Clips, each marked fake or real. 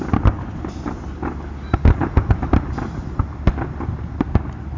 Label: real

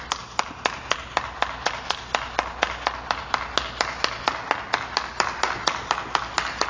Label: real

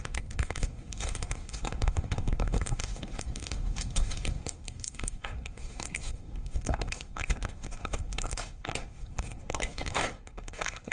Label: fake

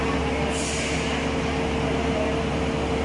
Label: real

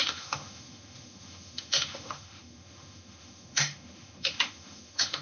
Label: fake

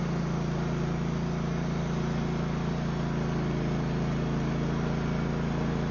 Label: real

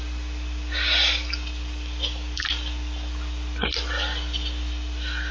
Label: real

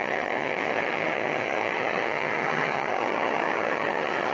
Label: fake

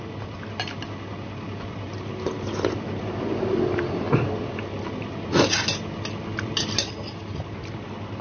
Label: real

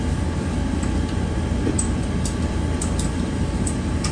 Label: real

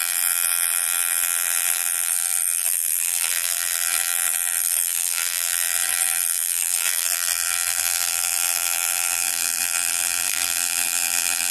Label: fake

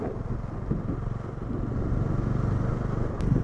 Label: real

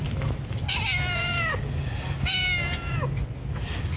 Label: real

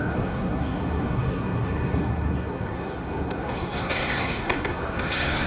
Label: fake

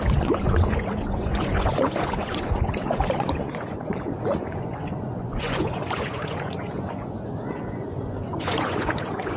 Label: fake